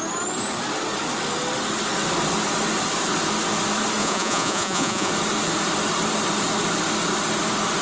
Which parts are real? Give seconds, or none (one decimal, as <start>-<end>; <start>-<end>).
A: 0.0-4.0; 5.1-7.8